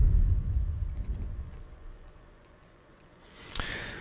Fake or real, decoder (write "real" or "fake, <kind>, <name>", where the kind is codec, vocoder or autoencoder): fake, vocoder, Vocos